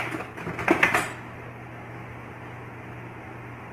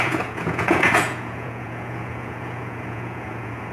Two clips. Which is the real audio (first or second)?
first